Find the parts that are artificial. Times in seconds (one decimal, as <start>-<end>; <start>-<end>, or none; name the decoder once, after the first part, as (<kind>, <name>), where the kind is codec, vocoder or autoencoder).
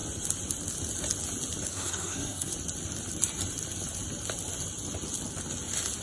1.7-2.5 (codec, SNAC)